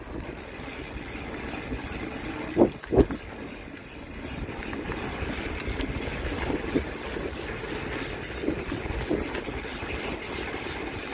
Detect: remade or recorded recorded